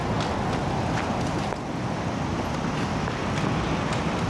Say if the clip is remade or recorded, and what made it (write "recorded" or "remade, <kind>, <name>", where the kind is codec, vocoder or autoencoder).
recorded